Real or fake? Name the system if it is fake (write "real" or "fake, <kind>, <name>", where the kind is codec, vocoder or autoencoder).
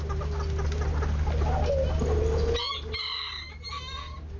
real